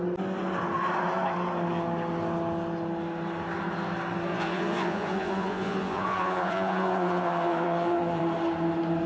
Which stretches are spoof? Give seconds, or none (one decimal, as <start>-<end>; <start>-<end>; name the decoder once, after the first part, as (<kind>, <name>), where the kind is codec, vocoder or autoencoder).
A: 4.3-8.2 (vocoder, Vocos)